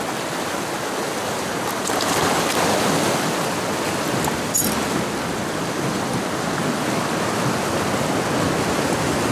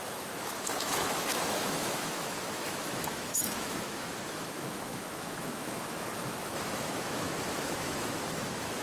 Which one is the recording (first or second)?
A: first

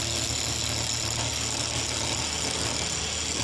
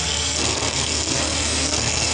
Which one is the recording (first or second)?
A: first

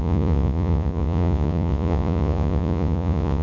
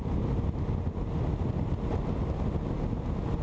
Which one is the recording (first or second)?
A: second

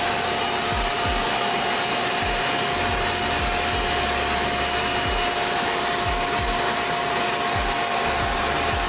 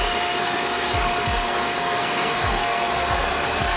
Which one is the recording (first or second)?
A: first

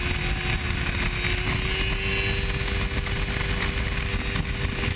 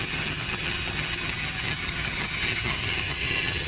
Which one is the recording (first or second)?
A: first